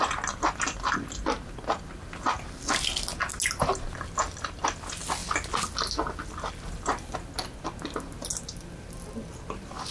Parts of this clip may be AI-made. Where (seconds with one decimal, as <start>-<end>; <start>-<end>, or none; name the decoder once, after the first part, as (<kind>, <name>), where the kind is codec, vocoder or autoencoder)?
none